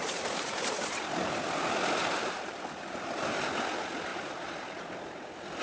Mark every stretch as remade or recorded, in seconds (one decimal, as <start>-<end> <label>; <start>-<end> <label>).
0.0-5.6 recorded

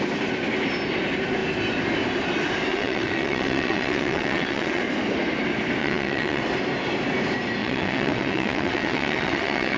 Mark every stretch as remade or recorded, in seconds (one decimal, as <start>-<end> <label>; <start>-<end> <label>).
0.0-2.7 recorded; 2.7-4.8 remade; 4.8-5.8 recorded; 5.8-6.4 remade; 6.4-7.6 recorded; 7.6-9.8 remade

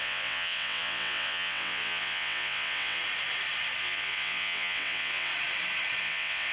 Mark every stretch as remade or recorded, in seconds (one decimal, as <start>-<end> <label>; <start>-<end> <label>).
0.0-3.0 remade; 3.0-3.8 recorded; 3.8-5.3 remade; 5.3-6.0 recorded; 6.0-6.5 remade

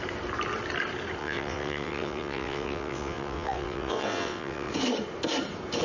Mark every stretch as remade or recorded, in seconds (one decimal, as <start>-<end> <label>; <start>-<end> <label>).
0.0-1.2 recorded; 1.2-4.7 remade; 4.7-5.8 recorded

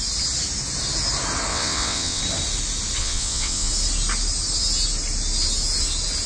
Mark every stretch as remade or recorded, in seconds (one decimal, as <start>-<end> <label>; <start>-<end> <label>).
0.0-1.5 recorded; 1.5-2.2 remade; 2.2-3.0 recorded; 3.0-3.7 remade; 3.7-6.3 recorded

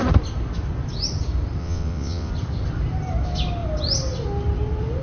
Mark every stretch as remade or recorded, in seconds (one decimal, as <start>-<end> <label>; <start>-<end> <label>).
0.0-1.6 recorded; 1.6-2.3 remade; 2.3-5.0 recorded

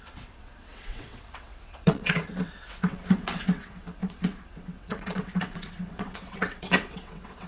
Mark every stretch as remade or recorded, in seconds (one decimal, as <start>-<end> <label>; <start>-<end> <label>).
0.0-7.5 remade